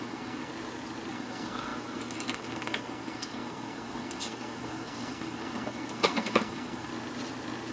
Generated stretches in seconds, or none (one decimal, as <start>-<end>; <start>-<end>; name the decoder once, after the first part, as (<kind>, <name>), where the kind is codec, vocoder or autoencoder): 0.0-0.5 (codec, SNAC); 1.1-6.9